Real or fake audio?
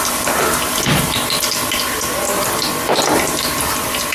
real